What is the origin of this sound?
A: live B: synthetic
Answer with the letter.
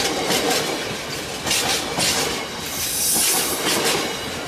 A